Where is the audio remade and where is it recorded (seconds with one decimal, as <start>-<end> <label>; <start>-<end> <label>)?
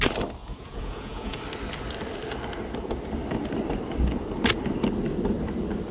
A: 0.0-0.4 recorded; 0.4-1.4 remade; 1.4-5.9 recorded